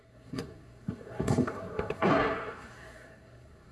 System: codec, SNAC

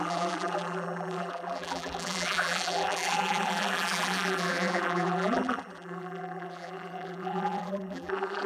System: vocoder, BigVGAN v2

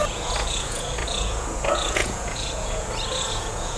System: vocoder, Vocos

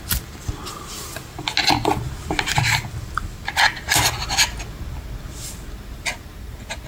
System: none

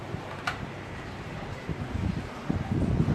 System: none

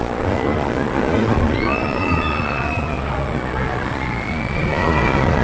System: vocoder, Vocos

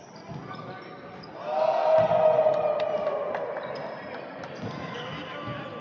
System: none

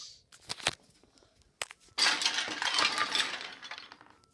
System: none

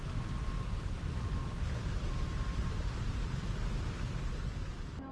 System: none